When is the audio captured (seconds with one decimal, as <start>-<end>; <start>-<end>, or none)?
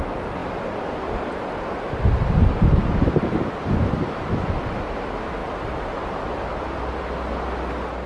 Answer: 0.0-8.1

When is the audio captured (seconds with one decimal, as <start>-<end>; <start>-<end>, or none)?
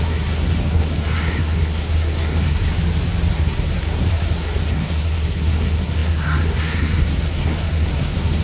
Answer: 2.7-3.3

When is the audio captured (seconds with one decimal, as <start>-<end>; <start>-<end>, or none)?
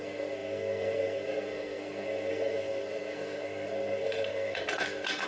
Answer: none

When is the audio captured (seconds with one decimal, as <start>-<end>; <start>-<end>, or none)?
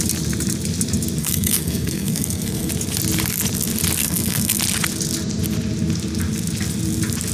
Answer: 0.0-1.2; 2.7-4.0; 4.6-7.3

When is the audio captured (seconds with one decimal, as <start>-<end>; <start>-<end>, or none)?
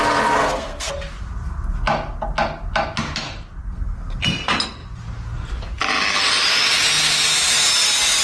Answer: 0.0-0.4; 0.9-3.6; 4.2-8.2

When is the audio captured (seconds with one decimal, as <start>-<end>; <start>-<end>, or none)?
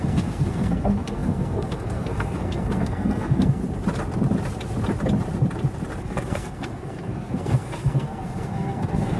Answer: 3.6-6.0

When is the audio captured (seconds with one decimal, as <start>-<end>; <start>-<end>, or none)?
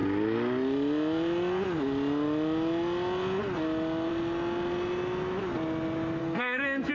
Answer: 0.0-6.2